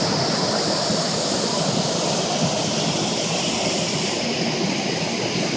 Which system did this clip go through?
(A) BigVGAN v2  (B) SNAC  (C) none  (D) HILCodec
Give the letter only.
C